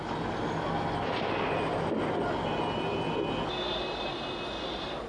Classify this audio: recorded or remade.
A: recorded